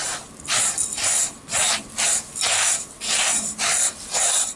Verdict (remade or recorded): recorded